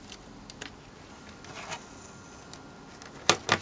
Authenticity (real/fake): real